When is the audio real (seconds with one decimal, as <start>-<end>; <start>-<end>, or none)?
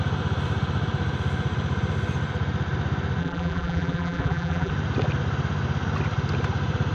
0.0-3.2; 4.7-6.9